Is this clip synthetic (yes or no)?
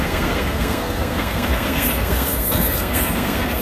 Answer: yes